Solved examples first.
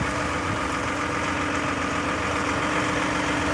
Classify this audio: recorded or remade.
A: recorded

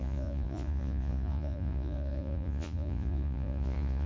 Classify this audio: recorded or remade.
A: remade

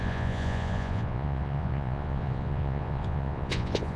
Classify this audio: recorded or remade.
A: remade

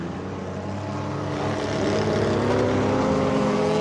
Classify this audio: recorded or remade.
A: recorded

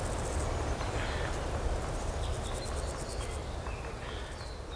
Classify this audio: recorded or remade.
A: recorded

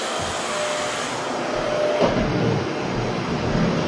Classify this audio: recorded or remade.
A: recorded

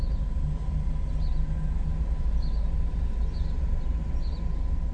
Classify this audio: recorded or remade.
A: recorded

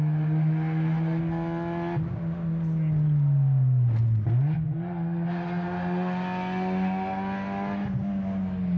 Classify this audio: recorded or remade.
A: recorded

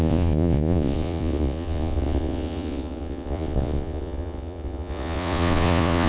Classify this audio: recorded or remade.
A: remade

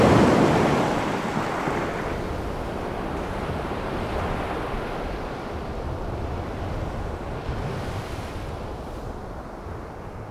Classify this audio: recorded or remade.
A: recorded